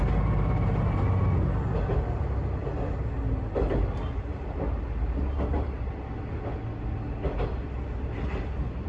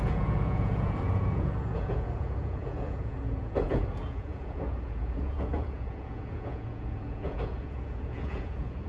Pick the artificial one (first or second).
second